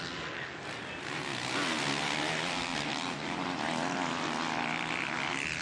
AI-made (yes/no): no